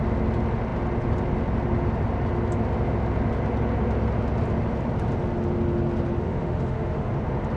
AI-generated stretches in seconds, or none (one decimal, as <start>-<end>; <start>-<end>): 6.2-7.1